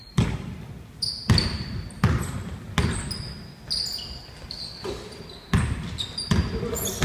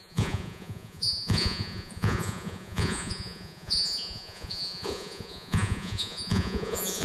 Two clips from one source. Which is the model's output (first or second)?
second